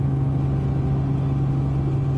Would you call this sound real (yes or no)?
yes